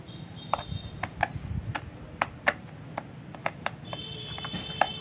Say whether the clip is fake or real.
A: real